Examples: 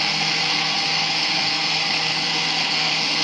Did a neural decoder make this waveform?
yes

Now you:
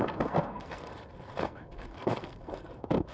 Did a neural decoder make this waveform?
yes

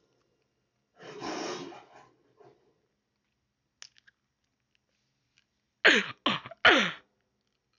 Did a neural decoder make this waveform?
no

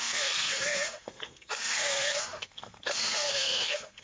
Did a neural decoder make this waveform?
yes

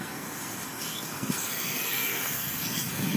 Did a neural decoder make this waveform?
yes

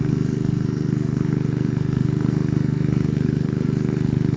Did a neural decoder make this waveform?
yes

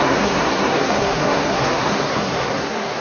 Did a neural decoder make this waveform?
yes